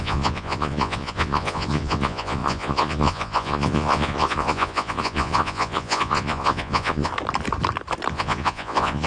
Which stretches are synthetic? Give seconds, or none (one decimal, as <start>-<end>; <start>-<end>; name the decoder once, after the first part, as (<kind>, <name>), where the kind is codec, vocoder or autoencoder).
0.0-7.1 (vocoder, Vocos); 8.1-9.1